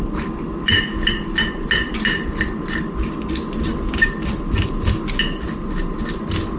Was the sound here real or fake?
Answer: real